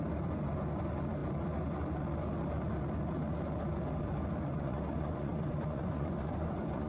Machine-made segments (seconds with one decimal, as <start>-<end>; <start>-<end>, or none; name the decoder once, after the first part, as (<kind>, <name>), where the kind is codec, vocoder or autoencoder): 4.5-6.9 (vocoder, Vocos)